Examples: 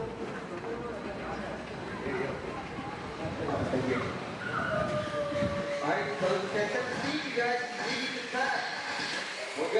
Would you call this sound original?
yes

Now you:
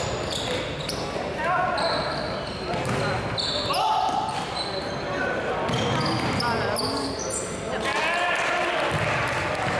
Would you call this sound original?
yes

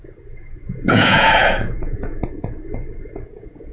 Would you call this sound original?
no